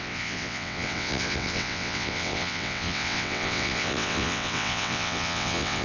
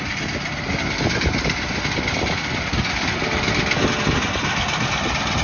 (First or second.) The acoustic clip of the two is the second